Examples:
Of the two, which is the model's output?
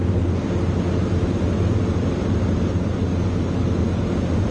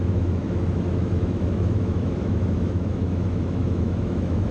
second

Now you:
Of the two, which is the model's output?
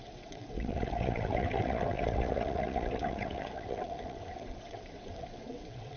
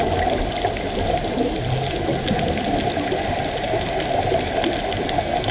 first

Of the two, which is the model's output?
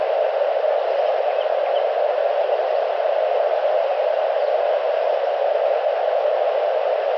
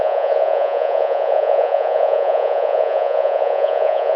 second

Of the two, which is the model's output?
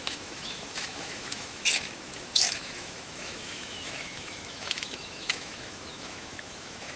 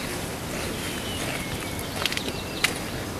first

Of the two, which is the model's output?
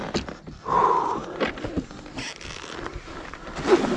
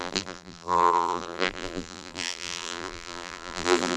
second